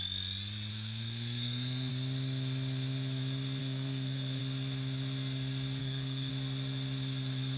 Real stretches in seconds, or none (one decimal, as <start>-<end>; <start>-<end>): 0.0-0.7; 1.9-3.6; 4.4-5.8; 6.3-7.6